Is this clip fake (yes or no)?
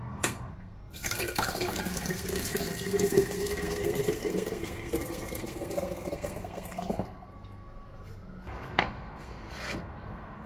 yes